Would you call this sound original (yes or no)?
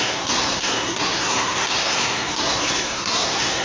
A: no